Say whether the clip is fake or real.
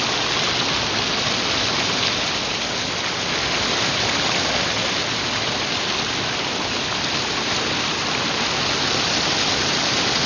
real